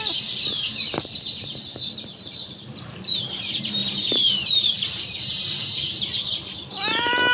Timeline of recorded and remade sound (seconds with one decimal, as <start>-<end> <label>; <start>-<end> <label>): 0.0-7.3 remade